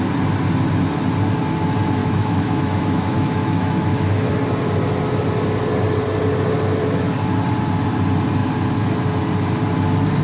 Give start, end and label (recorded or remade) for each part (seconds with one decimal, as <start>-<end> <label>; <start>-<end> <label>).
0.0-2.0 recorded; 2.0-4.3 remade; 4.3-10.2 recorded